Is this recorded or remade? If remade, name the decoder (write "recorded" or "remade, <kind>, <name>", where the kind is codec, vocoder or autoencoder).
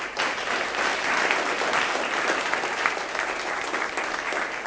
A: recorded